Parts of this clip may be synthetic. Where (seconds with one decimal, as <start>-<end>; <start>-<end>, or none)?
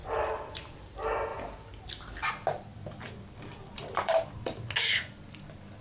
0.0-0.9; 2.7-4.6